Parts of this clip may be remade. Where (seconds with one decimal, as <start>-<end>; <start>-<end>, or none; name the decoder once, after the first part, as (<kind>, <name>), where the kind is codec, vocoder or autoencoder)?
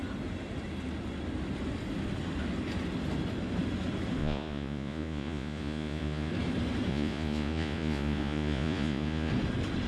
4.2-6.3 (vocoder, Vocos); 6.9-9.3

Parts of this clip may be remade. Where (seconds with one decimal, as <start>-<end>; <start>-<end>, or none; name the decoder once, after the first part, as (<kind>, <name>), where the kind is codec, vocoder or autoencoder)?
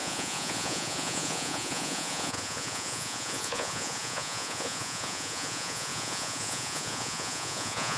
0.0-8.0 (vocoder, Vocos)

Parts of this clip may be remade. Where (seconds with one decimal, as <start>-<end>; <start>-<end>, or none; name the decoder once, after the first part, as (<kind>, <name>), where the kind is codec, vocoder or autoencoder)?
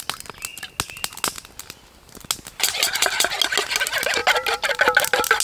none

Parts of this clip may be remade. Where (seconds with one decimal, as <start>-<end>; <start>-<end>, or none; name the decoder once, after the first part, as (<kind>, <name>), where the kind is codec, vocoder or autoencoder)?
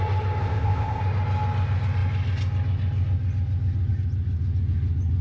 0.4-1.0 (codec, ZipCodec)